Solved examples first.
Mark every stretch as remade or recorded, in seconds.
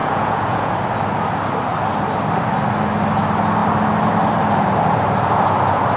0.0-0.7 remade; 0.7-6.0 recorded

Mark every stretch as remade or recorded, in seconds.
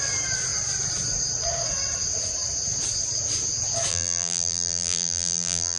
0.0-3.9 recorded; 3.9-5.8 remade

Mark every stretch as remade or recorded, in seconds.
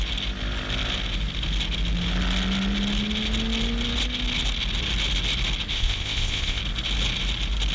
0.0-5.7 recorded; 5.7-6.6 remade; 6.6-7.7 recorded